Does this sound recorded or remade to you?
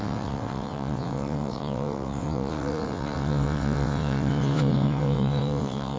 remade